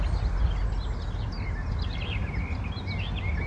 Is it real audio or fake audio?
real